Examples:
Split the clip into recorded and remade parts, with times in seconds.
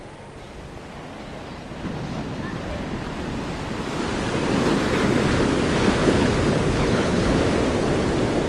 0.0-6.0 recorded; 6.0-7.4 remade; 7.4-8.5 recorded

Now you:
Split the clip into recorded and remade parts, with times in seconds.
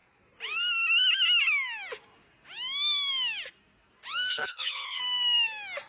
0.0-4.3 recorded; 4.3-5.0 remade; 5.0-5.9 recorded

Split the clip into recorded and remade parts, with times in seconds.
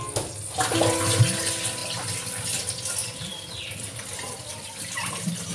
0.0-5.5 recorded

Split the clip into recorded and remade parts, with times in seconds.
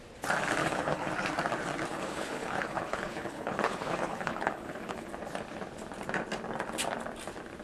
0.0-0.6 recorded; 0.6-1.1 remade; 1.1-1.9 recorded; 1.9-5.1 remade; 5.1-7.6 recorded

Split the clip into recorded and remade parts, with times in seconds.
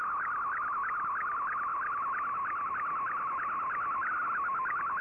0.0-5.0 recorded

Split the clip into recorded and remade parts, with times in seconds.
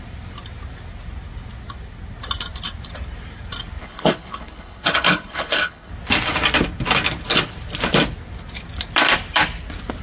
0.0-3.8 recorded; 3.8-5.9 remade; 5.9-10.0 recorded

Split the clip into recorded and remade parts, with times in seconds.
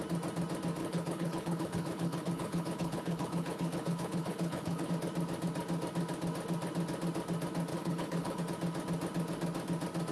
0.0-0.8 recorded; 0.8-4.9 remade; 4.9-7.7 recorded; 7.7-8.4 remade; 8.4-10.1 recorded